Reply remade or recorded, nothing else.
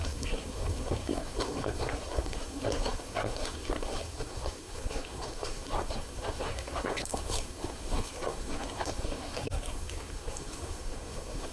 remade